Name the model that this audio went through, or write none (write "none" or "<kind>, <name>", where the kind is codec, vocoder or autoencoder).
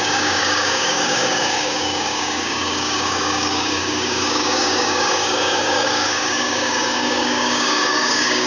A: codec, DAC